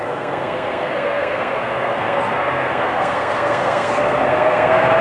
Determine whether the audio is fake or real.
fake